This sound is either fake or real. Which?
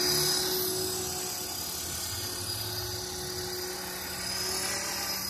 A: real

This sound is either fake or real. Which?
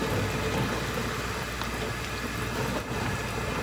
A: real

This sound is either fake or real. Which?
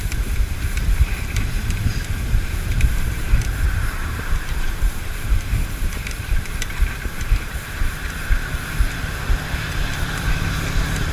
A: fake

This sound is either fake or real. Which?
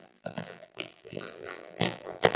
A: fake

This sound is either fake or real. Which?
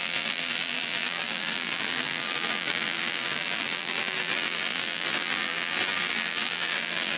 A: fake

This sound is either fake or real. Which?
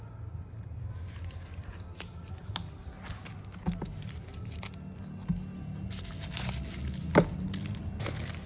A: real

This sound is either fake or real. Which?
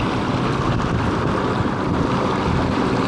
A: fake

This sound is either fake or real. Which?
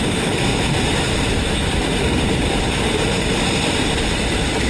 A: fake